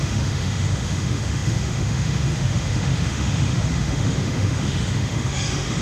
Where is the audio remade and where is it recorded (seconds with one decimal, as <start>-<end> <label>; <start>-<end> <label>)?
0.0-5.8 remade